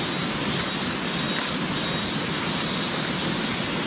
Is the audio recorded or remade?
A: recorded